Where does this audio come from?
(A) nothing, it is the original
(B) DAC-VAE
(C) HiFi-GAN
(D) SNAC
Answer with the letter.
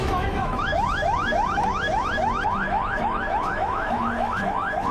B